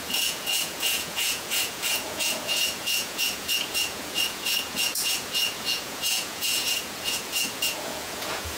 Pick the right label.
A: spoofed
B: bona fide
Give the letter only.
A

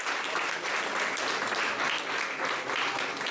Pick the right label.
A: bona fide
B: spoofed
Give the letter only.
A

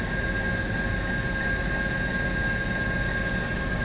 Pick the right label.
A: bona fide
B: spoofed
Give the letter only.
A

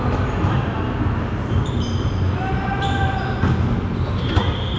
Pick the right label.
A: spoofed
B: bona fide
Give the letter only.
B